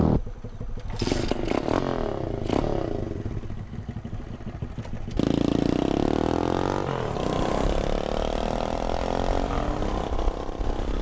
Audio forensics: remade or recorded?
recorded